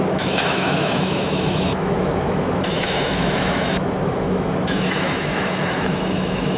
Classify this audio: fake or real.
fake